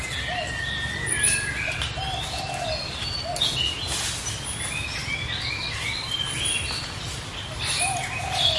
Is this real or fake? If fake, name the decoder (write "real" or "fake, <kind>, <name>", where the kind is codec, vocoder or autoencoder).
real